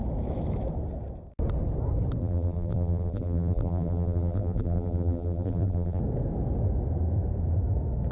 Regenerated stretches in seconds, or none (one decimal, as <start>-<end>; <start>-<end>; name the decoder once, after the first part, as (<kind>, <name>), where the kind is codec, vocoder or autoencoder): 2.2-6.0 (vocoder, BigVGAN v2)